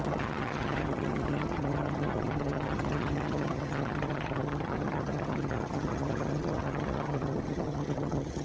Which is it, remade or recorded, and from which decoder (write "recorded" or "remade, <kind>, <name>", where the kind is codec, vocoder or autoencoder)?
remade, vocoder, HiFi-GAN